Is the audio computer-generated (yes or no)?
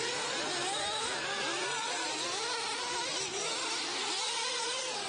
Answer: no